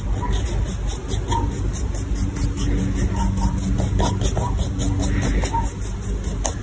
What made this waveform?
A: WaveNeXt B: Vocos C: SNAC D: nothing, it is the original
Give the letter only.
D